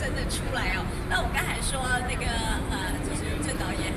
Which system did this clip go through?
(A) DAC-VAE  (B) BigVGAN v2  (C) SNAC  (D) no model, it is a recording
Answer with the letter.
D